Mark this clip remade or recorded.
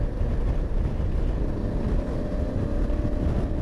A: recorded